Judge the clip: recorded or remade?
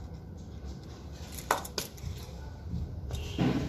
recorded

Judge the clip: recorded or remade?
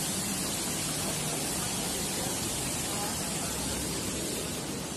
recorded